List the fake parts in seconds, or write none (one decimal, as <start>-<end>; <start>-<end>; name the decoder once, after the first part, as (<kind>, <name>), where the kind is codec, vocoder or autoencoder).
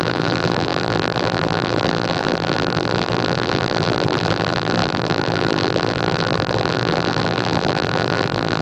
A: 0.0-8.6 (vocoder, BigVGAN v2)